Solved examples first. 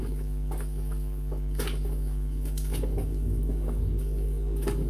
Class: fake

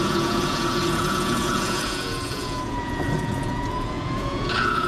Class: fake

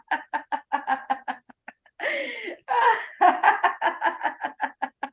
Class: real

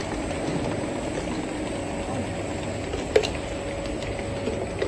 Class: real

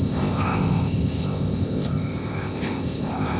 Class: fake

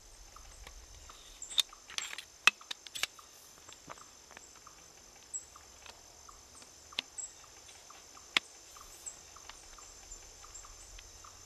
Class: real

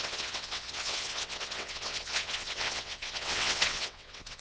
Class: fake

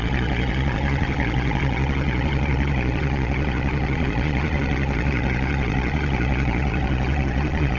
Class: fake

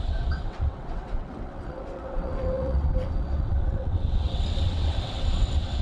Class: fake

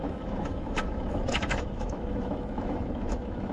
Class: fake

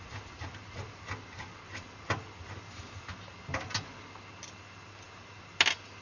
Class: real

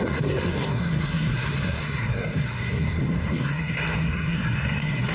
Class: fake